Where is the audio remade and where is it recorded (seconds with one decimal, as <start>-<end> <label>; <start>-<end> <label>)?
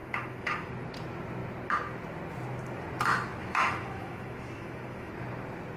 0.0-0.7 remade; 0.7-3.4 recorded; 3.4-5.1 remade; 5.1-5.8 recorded